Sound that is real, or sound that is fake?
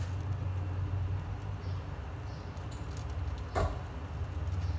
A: real